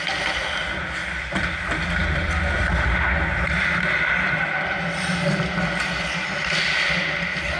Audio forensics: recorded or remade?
recorded